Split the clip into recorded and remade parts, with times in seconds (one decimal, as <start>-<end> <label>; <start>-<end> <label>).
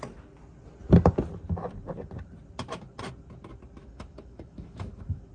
0.0-3.8 recorded; 3.8-5.3 remade